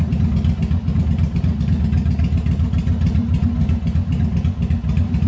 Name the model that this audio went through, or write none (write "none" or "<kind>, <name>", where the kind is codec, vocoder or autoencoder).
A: none